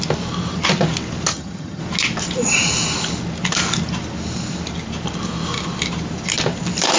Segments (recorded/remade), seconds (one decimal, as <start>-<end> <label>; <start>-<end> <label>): 0.0-1.3 recorded; 1.3-1.8 remade; 1.8-7.0 recorded